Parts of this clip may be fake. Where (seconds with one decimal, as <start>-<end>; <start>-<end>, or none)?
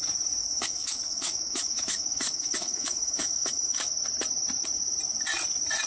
0.4-3.9